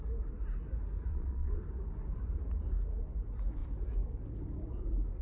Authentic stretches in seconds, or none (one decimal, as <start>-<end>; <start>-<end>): 0.0-1.1; 1.6-5.2